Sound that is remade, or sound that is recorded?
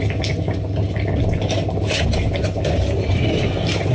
recorded